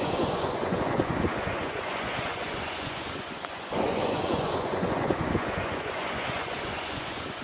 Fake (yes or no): yes